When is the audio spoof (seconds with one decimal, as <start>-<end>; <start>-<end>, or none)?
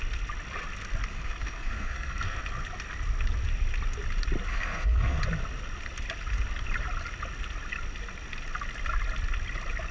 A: 1.1-2.4; 4.5-5.2